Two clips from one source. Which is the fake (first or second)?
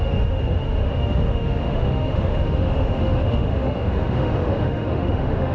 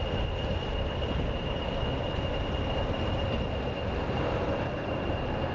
first